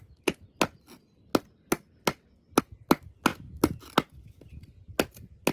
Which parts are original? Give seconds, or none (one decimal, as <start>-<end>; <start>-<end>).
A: 0.0-5.5